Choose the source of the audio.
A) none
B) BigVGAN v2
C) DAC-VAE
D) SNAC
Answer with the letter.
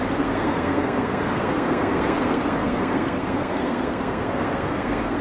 D